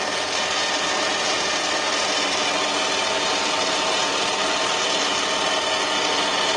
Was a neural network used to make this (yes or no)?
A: no